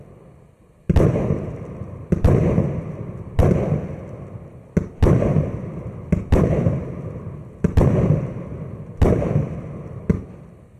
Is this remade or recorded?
recorded